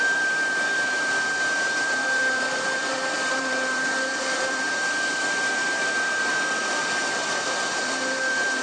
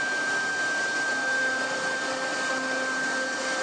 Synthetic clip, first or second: first